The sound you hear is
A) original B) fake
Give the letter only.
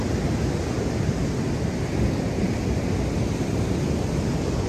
A